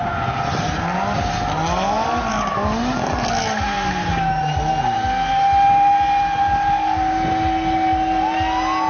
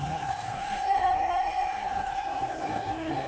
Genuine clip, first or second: first